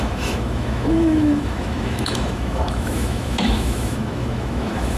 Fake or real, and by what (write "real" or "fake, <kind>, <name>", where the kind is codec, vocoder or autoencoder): fake, autoencoder, DAC-VAE